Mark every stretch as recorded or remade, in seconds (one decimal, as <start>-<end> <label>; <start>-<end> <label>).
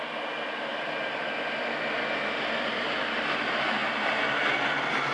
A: 0.0-5.1 recorded